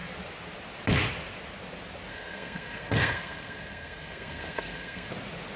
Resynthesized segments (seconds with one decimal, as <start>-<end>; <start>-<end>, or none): 2.1-5.1